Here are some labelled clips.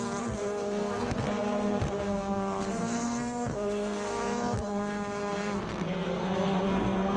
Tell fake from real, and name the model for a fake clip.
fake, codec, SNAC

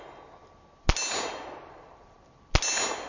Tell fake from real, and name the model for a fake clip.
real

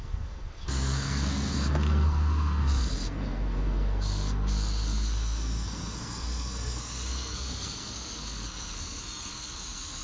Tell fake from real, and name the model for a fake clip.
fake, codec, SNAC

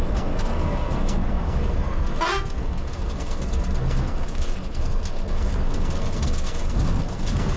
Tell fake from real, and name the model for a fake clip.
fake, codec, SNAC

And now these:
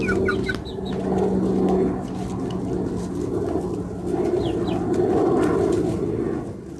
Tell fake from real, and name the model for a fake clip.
real